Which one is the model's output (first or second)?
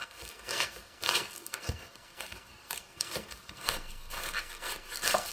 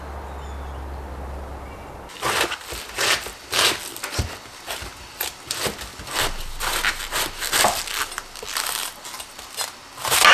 first